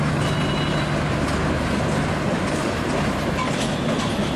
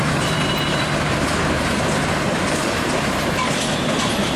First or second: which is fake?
second